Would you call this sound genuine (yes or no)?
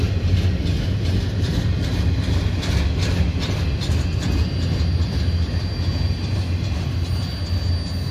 yes